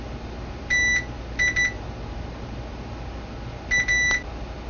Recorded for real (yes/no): yes